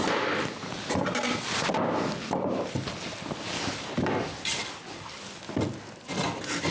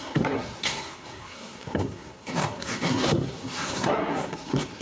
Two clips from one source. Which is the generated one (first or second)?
second